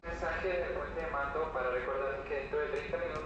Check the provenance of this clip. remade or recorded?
recorded